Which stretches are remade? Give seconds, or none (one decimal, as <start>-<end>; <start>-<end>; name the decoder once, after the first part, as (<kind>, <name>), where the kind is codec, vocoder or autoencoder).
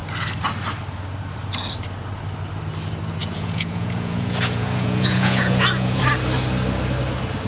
3.2-6.0 (vocoder, Vocos)